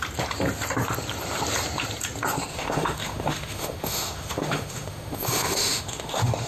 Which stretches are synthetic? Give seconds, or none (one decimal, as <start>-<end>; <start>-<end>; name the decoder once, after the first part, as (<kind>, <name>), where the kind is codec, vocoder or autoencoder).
2.5-6.5 (autoencoder, DAC-VAE)